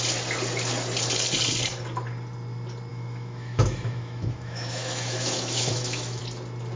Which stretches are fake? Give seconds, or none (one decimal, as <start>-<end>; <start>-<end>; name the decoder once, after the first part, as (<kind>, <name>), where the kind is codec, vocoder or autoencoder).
2.9-6.2 (autoencoder, DAC-VAE)